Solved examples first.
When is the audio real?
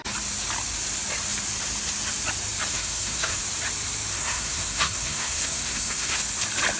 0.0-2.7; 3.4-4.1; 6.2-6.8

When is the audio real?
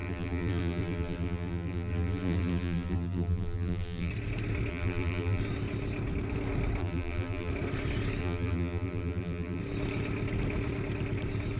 4.1-4.7; 5.4-6.8; 7.5-8.2; 9.6-11.6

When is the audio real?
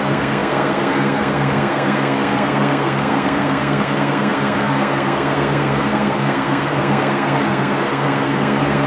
none